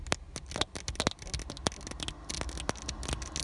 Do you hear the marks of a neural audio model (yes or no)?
no